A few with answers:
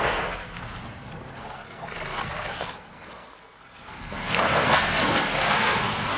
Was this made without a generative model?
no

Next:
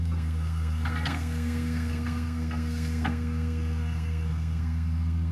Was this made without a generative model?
no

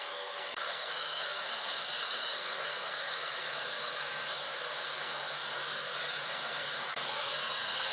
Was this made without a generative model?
no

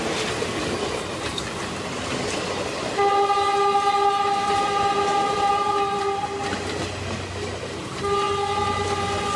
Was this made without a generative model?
yes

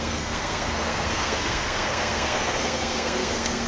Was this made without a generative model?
no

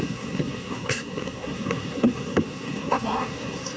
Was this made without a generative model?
no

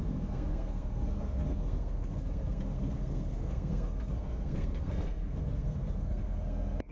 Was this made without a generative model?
no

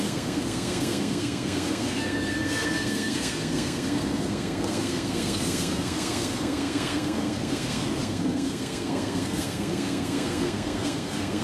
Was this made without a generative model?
no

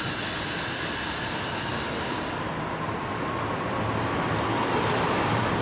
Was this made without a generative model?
yes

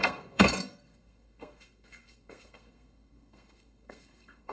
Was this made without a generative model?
no